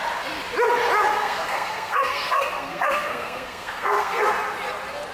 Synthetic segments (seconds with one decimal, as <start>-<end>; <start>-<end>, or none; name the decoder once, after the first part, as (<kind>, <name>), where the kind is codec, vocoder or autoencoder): 1.1-4.2 (codec, SNAC)